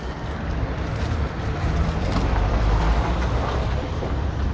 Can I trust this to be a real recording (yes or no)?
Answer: no